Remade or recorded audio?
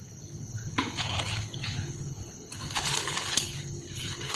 remade